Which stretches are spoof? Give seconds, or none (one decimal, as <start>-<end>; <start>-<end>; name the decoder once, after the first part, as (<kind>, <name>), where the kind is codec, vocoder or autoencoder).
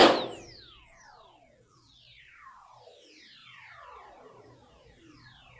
2.2-5.6 (vocoder, BigVGAN v2)